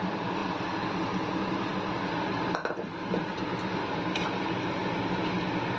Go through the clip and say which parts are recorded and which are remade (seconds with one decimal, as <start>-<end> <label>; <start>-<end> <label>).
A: 0.0-5.8 recorded